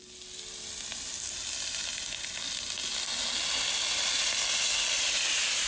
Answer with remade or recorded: recorded